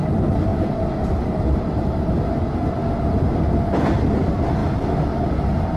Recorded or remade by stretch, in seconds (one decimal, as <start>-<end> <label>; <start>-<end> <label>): 0.0-0.5 recorded; 0.5-2.4 remade; 2.4-5.8 recorded